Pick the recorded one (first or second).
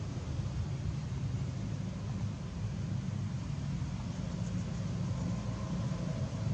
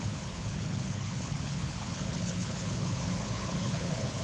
first